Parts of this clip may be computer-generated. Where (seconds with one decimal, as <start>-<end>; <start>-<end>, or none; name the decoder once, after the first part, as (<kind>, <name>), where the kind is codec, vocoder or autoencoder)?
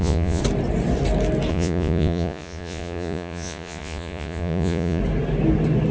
0.0-0.4 (vocoder, Vocos); 1.5-5.0